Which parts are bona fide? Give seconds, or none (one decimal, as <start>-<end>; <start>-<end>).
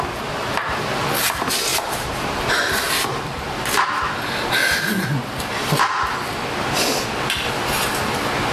0.0-1.7; 3.6-8.5